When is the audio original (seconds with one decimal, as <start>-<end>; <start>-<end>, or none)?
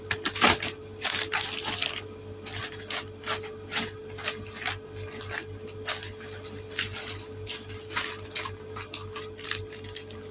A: 0.0-10.3